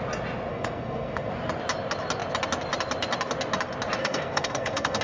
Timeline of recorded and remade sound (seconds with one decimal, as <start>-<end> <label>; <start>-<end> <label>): 0.0-0.5 recorded; 0.5-1.3 remade; 1.3-4.0 recorded; 4.0-5.0 remade